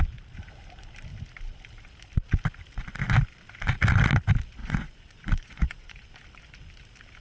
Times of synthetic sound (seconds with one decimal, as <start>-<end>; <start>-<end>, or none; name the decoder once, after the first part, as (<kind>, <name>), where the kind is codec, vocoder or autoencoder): 4.6-6.1 (vocoder, Vocos)